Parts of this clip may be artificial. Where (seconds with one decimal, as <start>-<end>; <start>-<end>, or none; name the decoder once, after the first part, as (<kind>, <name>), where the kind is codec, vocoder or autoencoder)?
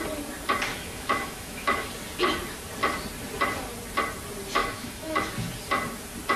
0.7-1.9 (autoencoder, DAC-VAE); 4.6-5.3